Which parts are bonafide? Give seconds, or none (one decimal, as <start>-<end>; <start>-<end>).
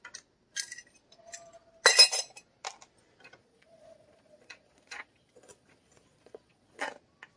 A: 0.0-3.4; 6.9-7.4